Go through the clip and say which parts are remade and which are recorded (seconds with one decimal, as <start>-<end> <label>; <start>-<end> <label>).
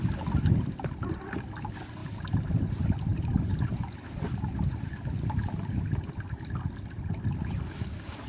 0.0-2.0 recorded; 2.0-2.5 remade; 2.5-3.1 recorded; 3.1-4.9 remade; 4.9-8.3 recorded